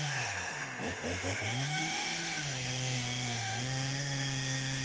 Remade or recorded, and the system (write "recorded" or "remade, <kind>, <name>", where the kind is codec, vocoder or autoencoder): remade, autoencoder, DAC-VAE